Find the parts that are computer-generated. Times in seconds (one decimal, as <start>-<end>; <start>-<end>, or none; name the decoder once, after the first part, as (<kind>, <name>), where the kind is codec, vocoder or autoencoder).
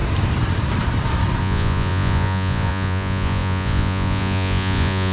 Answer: 1.4-5.1 (vocoder, Vocos)